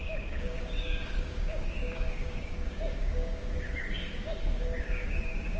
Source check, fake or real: fake